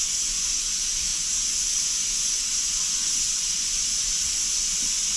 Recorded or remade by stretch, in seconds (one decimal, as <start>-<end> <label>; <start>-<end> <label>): 0.0-5.2 remade